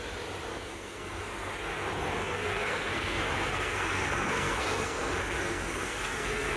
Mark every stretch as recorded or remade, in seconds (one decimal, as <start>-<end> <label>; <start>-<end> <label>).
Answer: 0.0-0.5 recorded; 0.5-1.5 remade; 1.5-2.2 recorded; 2.2-6.6 remade